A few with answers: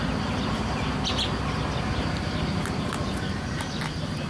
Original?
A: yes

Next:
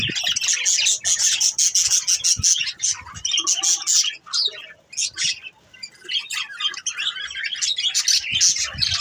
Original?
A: yes